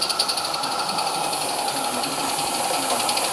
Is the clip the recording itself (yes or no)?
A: yes